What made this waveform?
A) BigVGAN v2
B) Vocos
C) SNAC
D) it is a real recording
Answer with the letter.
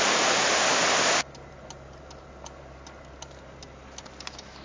D